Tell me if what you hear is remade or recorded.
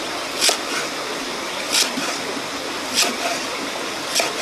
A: recorded